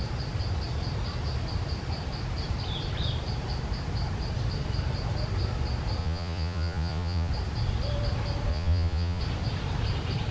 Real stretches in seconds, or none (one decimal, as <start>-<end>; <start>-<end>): 0.0-6.0; 7.3-8.5; 9.2-10.3